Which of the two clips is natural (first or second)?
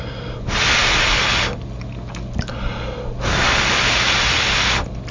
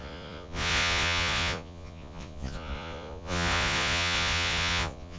first